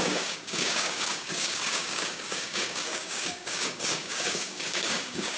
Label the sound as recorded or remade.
remade